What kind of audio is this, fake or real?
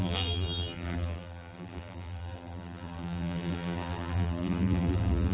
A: fake